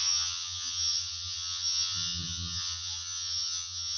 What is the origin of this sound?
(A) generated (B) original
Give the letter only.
A